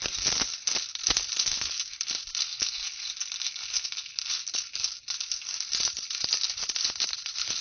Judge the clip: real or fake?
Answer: real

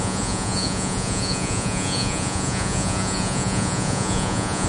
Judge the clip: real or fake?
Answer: fake